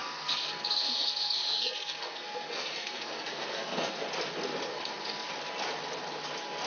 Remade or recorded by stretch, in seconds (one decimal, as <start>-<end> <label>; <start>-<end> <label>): 0.0-4.0 remade; 4.0-4.7 recorded; 4.7-5.3 remade; 5.3-6.7 recorded